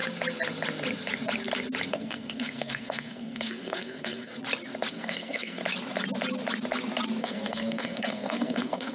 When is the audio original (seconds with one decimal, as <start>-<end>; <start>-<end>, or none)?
0.0-1.9; 4.3-4.9; 5.6-7.2